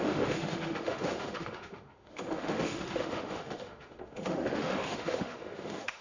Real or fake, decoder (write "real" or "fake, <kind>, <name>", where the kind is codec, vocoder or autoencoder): fake, autoencoder, DAC-VAE